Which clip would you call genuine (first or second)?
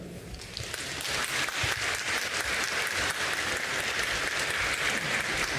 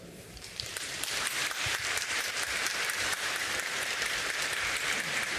first